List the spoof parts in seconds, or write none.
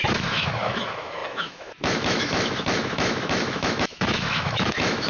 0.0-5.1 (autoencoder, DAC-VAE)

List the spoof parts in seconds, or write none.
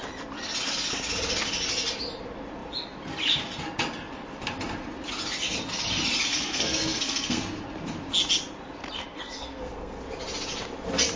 6.3-7.4 (codec, SNAC); 9.1-10.0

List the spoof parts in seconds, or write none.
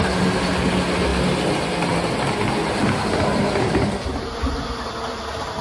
none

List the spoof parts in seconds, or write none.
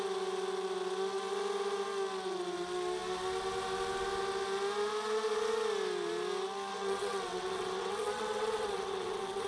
6.7-9.5 (vocoder, WaveNeXt)